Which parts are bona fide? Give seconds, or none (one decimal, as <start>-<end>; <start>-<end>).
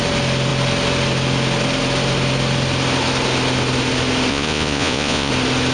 0.0-4.3; 5.3-5.7